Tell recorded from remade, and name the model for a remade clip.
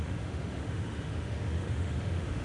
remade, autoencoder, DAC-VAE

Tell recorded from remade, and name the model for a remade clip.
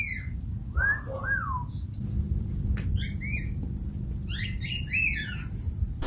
recorded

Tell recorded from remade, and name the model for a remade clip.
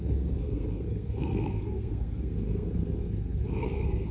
remade, codec, SNAC